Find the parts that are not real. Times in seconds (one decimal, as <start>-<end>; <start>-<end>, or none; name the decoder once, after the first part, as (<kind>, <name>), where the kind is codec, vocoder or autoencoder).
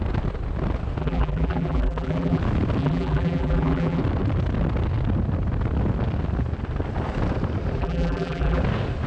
1.0-2.4 (vocoder, BigVGAN v2); 2.8-4.0; 7.8-8.6